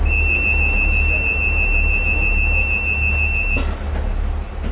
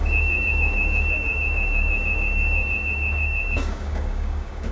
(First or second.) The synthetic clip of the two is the second